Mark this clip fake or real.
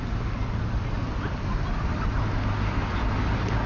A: real